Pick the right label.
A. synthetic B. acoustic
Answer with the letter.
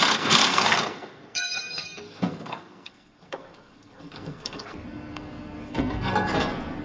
A